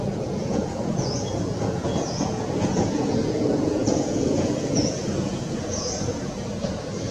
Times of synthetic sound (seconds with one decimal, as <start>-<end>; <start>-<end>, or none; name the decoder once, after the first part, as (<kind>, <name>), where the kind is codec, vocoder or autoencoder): 0.0-7.1 (vocoder, Vocos)